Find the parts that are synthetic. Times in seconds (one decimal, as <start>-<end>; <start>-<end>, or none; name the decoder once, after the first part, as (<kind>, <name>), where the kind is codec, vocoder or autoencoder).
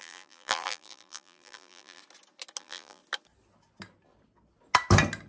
0.0-2.0 (vocoder, BigVGAN v2); 2.6-3.0